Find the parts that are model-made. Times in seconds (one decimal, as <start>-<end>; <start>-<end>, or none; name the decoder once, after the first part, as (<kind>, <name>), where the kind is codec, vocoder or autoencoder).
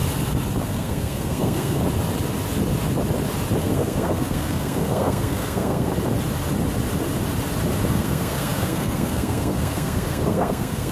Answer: 0.6-1.8 (codec, SNAC); 3.6-5.9; 7.9-10.9